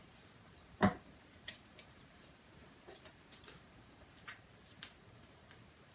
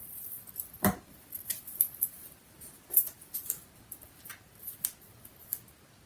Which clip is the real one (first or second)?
second